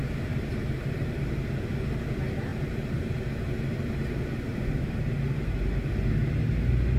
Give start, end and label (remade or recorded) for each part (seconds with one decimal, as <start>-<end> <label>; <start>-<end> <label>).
0.0-0.6 recorded; 0.6-1.2 remade; 1.2-2.5 recorded; 2.5-5.9 remade; 5.9-7.0 recorded